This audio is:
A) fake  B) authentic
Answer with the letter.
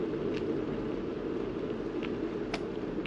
B